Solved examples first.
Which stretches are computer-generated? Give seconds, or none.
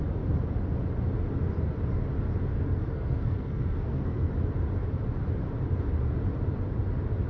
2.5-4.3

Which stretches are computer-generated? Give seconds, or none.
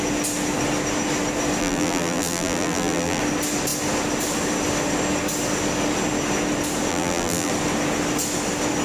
1.6-3.2; 6.9-7.5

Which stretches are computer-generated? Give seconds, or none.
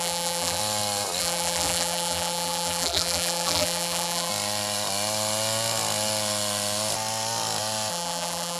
0.0-0.6; 1.2-4.3; 7.9-8.6